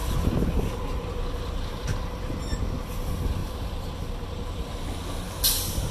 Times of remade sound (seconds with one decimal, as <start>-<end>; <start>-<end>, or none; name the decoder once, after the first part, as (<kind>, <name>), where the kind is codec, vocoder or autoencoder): 3.4-4.8 (vocoder, BigVGAN v2)